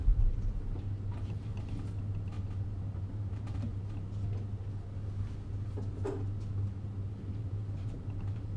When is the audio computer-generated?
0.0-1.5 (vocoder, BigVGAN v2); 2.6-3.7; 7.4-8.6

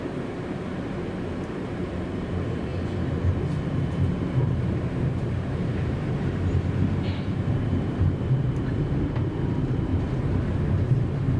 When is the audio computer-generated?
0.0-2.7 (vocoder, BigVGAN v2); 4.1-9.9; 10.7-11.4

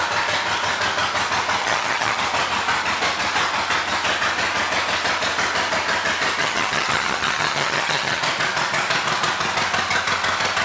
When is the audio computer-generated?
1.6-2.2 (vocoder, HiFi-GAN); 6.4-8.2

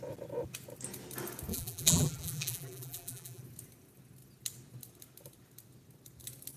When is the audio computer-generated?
1.5-3.4 (vocoder, BigVGAN v2)

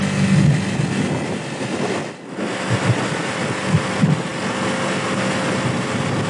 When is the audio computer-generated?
none